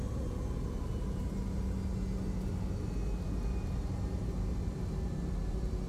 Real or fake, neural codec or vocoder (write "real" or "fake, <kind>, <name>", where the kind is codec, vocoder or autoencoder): real